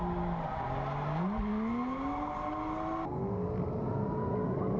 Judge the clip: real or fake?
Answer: real